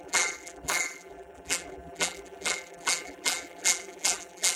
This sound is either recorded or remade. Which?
remade